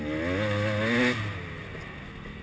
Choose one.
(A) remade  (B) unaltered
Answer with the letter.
B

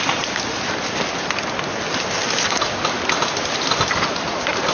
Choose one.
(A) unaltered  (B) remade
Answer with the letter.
A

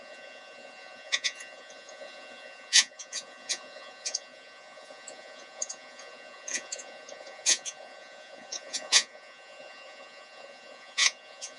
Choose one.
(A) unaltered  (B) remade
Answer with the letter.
B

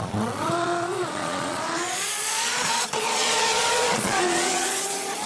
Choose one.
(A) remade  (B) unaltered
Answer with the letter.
A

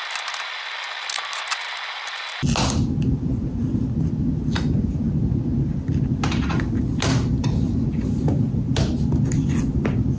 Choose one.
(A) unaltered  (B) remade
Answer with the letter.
A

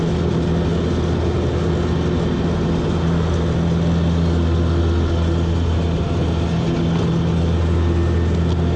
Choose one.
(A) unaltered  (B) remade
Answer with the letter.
A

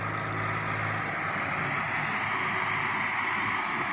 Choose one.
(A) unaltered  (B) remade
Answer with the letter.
A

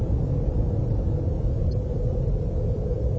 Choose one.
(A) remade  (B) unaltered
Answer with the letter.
B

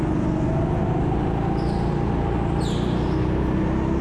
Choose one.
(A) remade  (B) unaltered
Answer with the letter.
B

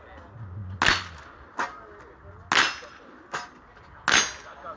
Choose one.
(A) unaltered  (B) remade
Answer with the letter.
A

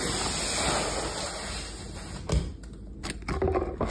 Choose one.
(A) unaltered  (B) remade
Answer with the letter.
A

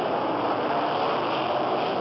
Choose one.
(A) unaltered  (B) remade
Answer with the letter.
A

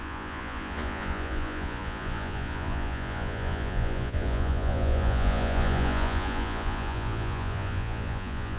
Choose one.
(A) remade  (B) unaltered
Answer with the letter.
A